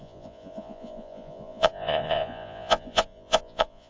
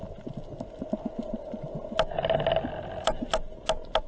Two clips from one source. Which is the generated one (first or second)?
first